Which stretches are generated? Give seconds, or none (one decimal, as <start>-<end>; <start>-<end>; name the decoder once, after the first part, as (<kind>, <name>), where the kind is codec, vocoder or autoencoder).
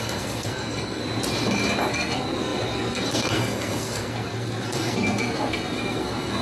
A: 0.0-1.0 (codec, SNAC); 1.9-6.4